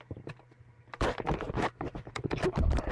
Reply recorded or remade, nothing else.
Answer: remade